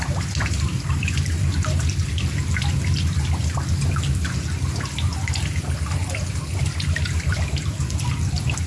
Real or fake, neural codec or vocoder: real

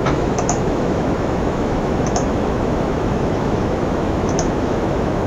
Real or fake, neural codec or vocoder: fake, autoencoder, DAC-VAE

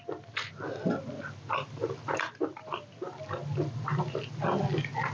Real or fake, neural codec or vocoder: real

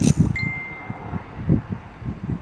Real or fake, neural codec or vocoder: real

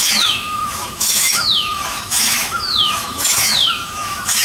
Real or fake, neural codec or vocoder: fake, autoencoder, DAC-VAE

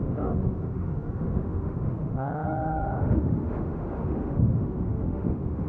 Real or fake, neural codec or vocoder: fake, autoencoder, DAC-VAE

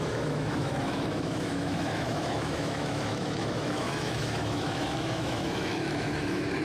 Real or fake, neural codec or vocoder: fake, autoencoder, DAC-VAE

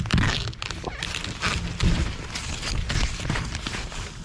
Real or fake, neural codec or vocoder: real